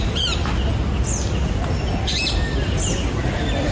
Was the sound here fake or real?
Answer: real